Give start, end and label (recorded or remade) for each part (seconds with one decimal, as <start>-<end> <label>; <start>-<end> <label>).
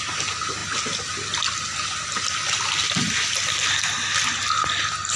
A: 0.0-5.2 recorded